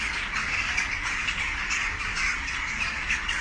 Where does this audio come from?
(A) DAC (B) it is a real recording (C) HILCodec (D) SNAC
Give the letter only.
A